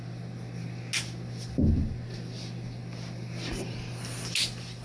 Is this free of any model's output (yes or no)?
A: yes